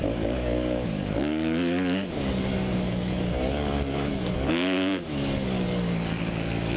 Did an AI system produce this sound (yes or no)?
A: yes